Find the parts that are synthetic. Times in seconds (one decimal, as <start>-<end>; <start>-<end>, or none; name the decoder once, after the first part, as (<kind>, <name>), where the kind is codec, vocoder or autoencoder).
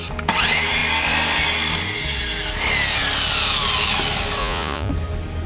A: 4.4-4.9 (vocoder, Vocos)